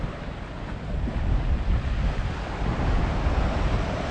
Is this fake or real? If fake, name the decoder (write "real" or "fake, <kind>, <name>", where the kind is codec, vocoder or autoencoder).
real